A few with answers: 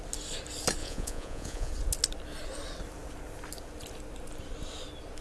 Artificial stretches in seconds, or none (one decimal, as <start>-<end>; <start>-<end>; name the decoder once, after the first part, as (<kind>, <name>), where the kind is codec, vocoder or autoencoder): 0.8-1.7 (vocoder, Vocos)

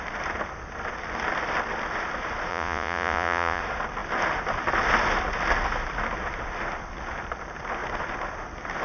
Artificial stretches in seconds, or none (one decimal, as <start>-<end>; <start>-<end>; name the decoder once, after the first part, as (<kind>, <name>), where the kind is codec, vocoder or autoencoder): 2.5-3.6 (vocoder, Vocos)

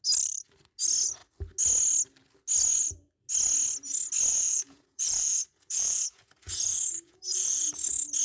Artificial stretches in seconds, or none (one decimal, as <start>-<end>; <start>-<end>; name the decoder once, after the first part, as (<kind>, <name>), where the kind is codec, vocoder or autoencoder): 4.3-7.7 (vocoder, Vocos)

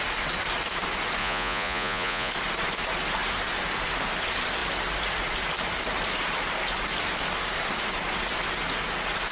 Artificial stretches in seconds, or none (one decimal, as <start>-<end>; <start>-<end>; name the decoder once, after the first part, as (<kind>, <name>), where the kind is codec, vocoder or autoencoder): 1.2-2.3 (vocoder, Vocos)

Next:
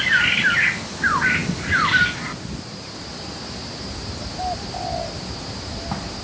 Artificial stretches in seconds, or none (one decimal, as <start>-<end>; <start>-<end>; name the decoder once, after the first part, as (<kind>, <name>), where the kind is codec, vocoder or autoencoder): none